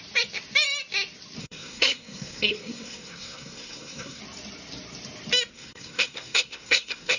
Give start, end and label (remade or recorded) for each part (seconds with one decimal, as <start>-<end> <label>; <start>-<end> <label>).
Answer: 0.0-1.4 recorded; 1.4-4.2 remade; 4.2-5.5 recorded; 5.5-7.2 remade